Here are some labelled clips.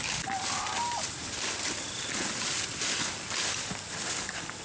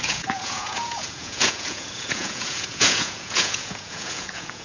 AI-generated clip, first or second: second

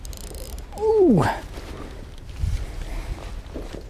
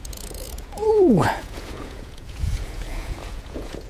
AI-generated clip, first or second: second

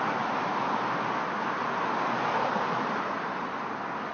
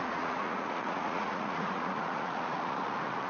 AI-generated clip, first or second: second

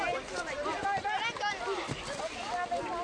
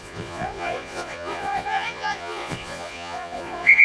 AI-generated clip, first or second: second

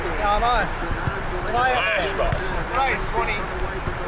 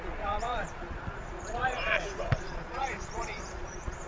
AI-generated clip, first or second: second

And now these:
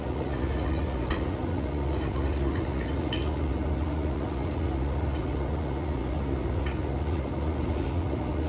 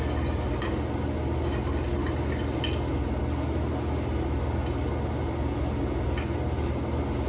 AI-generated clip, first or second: first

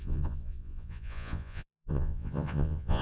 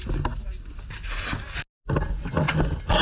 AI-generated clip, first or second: first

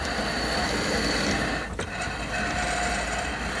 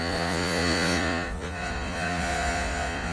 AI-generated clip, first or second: second